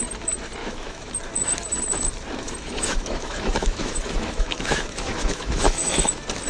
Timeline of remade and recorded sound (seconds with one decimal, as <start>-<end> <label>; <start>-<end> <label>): 0.0-0.6 recorded; 0.6-1.1 remade; 1.1-2.6 recorded; 2.6-6.0 remade; 6.0-6.5 recorded